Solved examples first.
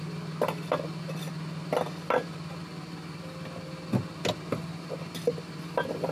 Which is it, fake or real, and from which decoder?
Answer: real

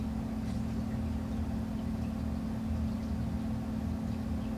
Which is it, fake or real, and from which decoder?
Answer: real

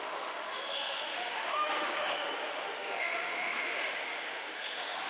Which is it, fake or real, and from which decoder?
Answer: fake, autoencoder, DAC-VAE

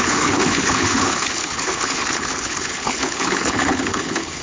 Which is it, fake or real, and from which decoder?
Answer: fake, codec, HILCodec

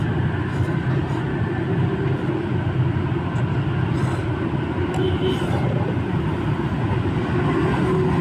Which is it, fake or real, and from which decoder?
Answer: real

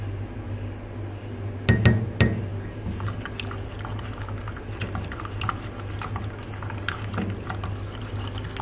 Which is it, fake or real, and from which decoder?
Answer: real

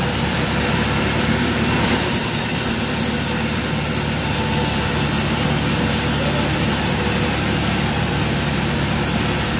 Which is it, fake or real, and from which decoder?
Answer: real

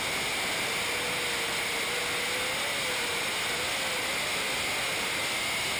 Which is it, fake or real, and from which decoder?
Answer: real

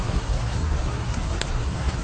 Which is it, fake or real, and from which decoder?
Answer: fake, codec, SNAC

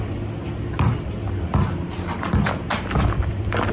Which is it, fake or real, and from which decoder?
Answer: real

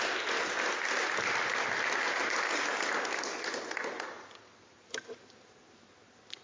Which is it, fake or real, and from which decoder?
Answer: real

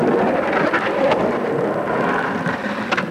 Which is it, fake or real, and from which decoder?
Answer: real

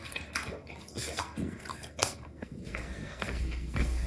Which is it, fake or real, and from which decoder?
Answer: fake, codec, SNAC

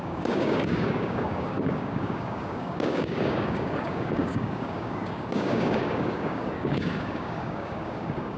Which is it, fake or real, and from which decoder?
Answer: fake, codec, DAC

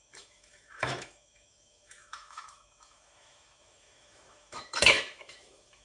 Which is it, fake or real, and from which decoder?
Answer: fake, autoencoder, DAC-VAE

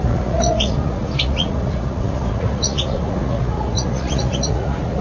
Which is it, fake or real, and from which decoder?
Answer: fake, vocoder, Vocos